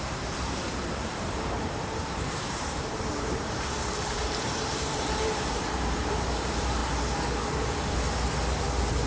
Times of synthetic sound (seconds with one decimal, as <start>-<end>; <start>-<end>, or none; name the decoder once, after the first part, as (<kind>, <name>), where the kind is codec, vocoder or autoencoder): 0.0-6.8 (vocoder, BigVGAN v2)